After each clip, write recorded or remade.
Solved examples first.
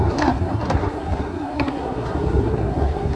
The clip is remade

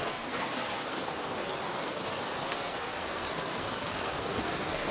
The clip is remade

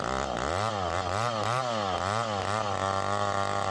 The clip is recorded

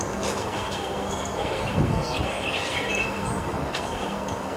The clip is remade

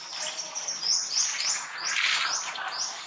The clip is recorded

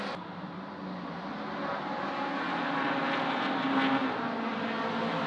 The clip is recorded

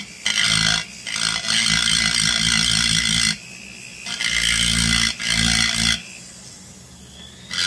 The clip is recorded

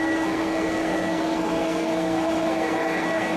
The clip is remade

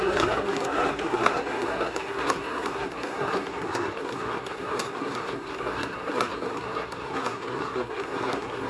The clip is remade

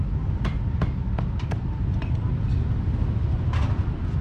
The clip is recorded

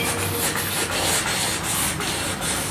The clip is recorded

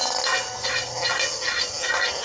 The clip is recorded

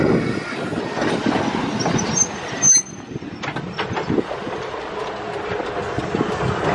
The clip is recorded